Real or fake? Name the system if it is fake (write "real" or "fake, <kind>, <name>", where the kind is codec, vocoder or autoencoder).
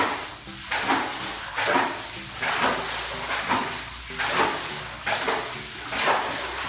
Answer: real